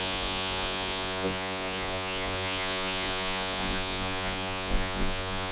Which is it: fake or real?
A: fake